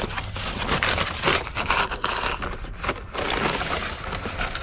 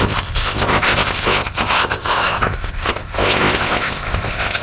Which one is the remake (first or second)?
second